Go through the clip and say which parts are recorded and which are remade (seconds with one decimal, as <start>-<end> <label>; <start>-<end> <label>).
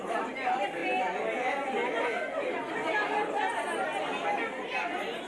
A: 0.0-5.3 recorded